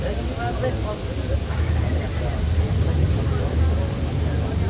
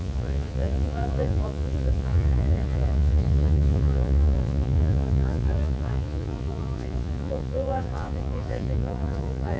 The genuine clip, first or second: first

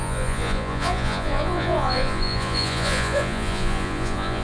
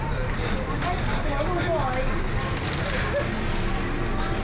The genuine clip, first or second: second